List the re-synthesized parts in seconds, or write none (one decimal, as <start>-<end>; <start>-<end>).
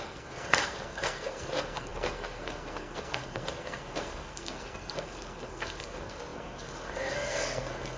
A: 0.0-8.0